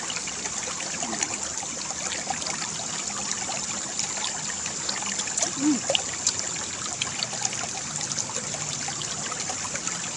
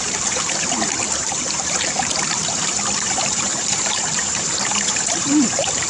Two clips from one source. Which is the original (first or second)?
first